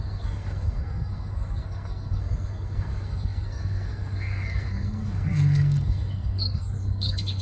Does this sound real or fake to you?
fake